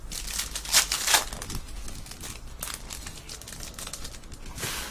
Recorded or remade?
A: recorded